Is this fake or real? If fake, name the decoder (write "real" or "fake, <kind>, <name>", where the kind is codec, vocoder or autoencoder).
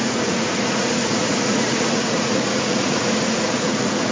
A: fake, vocoder, Vocos